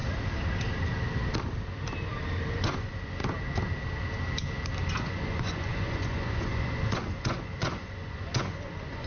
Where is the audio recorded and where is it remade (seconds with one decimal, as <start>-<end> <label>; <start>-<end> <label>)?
0.0-2.5 recorded; 2.5-3.2 remade; 3.2-4.9 recorded; 4.9-9.1 remade